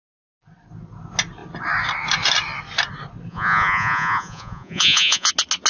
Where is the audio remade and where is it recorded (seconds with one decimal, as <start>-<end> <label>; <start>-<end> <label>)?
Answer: 0.0-3.3 recorded; 3.3-5.3 remade; 5.3-5.7 recorded